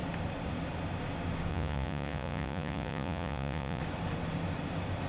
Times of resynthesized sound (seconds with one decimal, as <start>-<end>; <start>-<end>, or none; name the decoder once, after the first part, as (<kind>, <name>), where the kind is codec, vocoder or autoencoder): 1.5-3.8 (vocoder, Vocos)